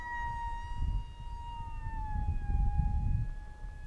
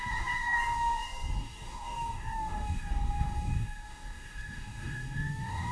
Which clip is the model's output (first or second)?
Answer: second